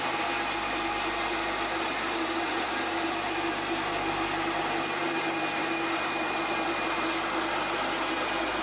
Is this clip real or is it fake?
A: real